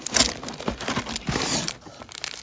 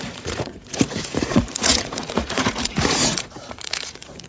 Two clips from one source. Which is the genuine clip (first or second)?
first